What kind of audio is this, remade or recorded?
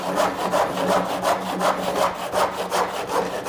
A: recorded